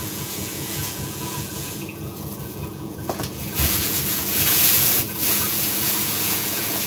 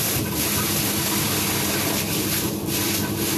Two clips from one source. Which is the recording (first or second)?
second